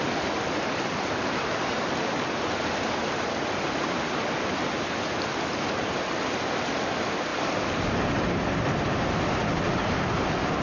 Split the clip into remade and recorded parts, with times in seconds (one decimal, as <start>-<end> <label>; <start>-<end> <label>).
0.0-10.6 recorded